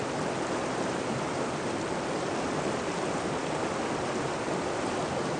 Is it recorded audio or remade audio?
recorded